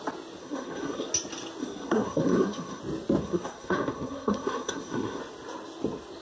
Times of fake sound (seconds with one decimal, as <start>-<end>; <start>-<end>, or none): 0.4-1.1; 1.6-2.8; 3.2-5.2